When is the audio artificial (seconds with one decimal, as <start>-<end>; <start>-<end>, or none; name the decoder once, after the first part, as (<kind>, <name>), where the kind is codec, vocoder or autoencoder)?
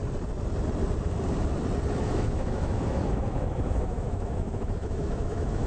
2.0-5.7 (autoencoder, DAC-VAE)